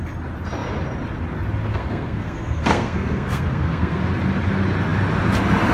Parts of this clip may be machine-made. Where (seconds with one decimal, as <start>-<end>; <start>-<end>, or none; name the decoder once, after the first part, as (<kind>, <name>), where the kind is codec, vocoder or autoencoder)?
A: 1.7-4.0 (codec, SNAC)

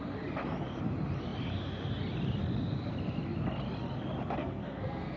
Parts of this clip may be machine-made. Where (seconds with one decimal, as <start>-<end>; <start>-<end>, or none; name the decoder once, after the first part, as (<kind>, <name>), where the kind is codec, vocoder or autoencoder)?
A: 4.4-5.2 (codec, SNAC)

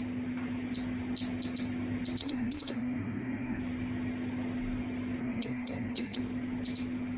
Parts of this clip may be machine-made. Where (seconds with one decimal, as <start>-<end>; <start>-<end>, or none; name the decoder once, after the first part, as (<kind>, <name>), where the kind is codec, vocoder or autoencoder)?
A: 2.2-3.6 (codec, SNAC); 5.2-6.2

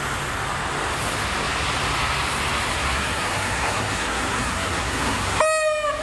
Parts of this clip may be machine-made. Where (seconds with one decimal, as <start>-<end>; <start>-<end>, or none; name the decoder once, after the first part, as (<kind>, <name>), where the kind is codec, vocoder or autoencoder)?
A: 2.7-5.4 (codec, SNAC)